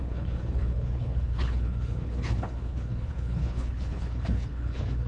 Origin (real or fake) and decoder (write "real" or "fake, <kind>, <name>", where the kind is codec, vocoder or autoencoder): fake, codec, HILCodec